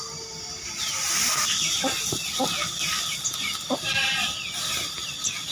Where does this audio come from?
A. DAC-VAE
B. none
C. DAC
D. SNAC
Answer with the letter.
B